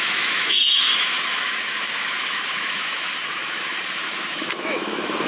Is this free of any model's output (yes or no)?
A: no